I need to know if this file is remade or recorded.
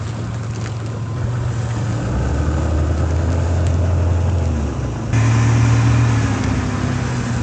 recorded